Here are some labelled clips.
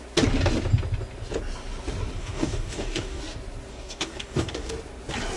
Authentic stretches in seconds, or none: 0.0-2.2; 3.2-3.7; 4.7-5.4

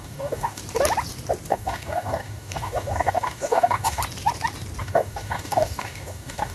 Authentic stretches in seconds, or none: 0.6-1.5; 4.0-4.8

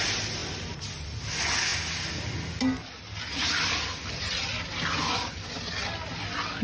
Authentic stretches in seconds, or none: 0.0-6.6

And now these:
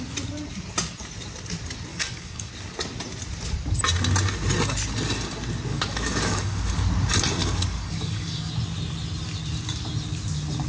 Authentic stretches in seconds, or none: 0.0-1.9; 2.5-5.7; 6.8-7.4; 8.5-10.7

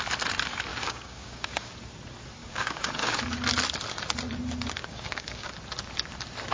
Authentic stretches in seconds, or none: 0.0-0.7; 1.7-2.4; 3.2-4.8; 5.5-6.5